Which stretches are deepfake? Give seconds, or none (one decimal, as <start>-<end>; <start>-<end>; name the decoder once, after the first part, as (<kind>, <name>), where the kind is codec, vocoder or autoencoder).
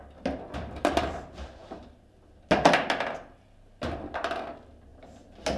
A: none